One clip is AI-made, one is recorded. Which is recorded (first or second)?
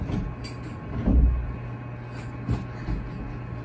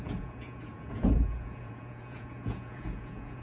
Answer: first